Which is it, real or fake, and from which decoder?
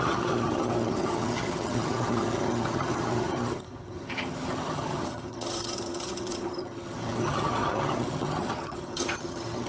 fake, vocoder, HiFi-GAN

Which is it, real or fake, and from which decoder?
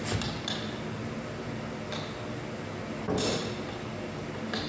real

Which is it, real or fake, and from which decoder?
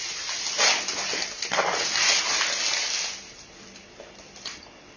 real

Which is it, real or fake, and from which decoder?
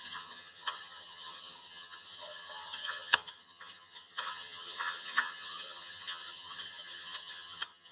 fake, vocoder, HiFi-GAN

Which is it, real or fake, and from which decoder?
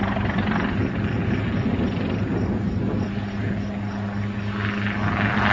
real